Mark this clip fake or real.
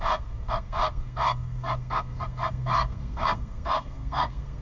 fake